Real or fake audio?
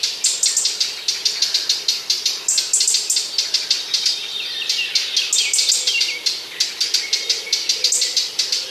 real